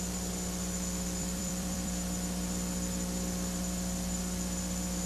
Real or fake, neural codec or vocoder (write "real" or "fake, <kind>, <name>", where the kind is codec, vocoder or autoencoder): fake, vocoder, BigVGAN v2